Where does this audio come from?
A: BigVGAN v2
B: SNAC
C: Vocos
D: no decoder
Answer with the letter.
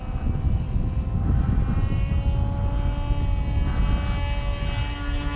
D